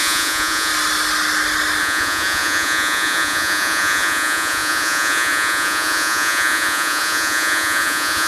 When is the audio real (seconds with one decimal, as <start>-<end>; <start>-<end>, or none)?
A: 0.7-1.8